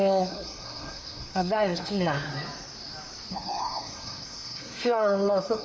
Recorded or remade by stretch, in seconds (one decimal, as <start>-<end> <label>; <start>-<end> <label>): 0.0-2.3 remade; 2.3-3.3 recorded; 3.3-5.6 remade